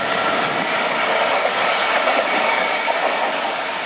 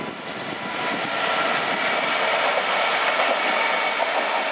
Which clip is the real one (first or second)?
second